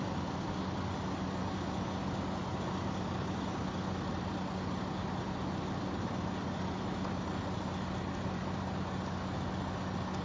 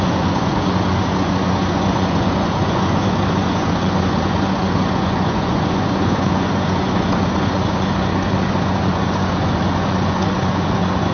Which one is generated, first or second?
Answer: second